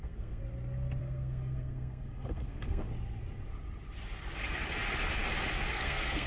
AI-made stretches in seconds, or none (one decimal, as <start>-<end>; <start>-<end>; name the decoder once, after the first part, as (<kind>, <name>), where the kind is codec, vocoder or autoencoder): 0.0-0.4 (codec, SNAC); 1.0-2.8; 5.7-6.3